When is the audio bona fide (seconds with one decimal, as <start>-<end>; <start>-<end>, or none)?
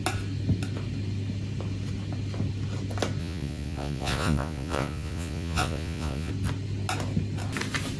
0.0-3.2; 6.3-8.0